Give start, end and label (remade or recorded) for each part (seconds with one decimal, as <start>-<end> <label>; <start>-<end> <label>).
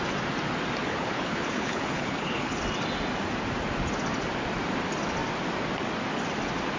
0.0-0.8 recorded; 0.8-2.6 remade; 2.6-6.8 recorded